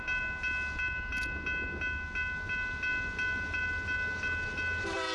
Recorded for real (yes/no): yes